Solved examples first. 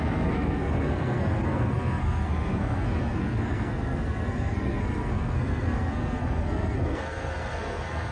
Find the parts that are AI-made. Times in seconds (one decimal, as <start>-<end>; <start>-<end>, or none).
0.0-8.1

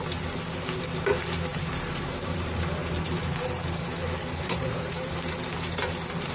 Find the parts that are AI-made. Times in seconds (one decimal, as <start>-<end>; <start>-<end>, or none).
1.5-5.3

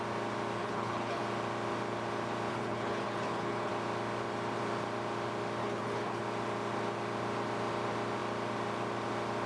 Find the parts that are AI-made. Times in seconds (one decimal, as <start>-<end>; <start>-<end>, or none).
0.6-1.2; 2.5-3.7; 5.6-6.2

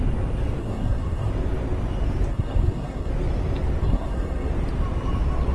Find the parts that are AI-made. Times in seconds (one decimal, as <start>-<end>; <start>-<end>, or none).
0.6-1.3; 2.3-3.1; 3.8-4.5

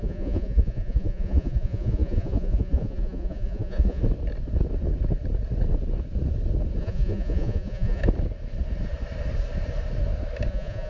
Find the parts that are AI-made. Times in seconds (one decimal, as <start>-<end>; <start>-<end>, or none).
0.0-4.0; 6.8-8.0; 10.5-10.9